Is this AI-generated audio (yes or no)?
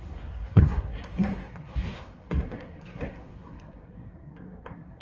yes